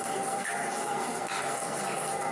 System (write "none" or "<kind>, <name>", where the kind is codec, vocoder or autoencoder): codec, SNAC